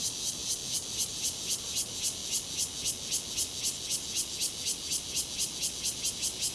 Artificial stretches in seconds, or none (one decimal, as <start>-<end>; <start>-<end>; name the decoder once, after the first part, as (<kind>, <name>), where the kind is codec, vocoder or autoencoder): 0.0-2.2 (vocoder, BigVGAN v2); 6.1-6.5